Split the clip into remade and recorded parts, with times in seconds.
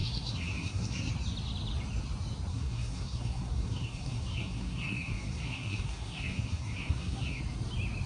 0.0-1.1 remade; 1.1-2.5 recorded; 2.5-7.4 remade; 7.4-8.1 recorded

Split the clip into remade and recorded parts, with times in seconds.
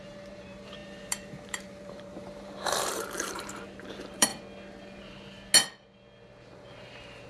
0.0-4.3 remade; 4.3-6.5 recorded; 6.5-7.3 remade